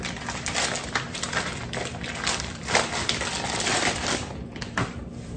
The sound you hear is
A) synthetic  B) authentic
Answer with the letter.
A